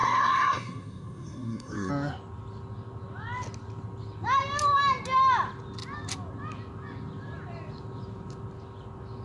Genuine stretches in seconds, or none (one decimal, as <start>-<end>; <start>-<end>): 1.9-9.2